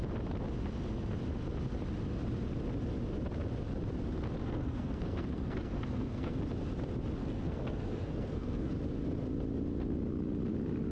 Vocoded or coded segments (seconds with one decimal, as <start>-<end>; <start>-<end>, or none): 4.4-6.4; 7.2-8.7